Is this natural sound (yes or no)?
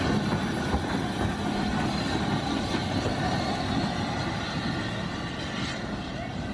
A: yes